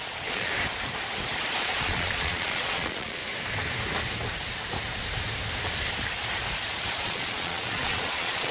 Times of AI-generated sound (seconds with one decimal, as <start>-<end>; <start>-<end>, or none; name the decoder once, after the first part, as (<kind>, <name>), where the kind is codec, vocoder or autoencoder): 0.0-0.5 (vocoder, Vocos); 1.6-3.2; 7.0-8.5